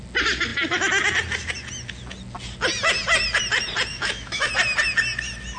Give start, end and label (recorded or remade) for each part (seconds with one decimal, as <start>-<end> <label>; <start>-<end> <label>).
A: 0.0-3.9 recorded; 3.9-4.5 remade; 4.5-5.6 recorded

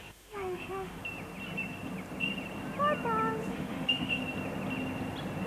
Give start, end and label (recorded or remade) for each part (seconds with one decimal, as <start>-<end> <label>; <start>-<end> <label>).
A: 0.0-1.0 remade; 1.0-3.5 recorded; 3.5-4.2 remade; 4.2-5.5 recorded